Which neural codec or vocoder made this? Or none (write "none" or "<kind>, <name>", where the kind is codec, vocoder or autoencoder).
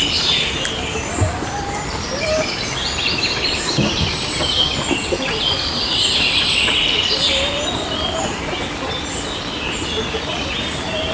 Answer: vocoder, BigVGAN v2